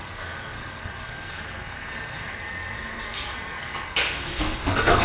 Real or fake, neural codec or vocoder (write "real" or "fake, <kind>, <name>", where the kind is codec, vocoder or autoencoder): fake, codec, SNAC